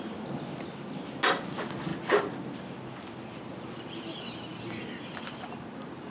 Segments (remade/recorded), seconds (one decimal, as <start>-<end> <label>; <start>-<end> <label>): 0.0-6.1 recorded